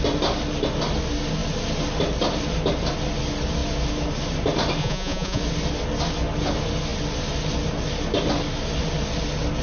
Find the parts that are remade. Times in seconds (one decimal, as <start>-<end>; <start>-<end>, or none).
4.8-5.4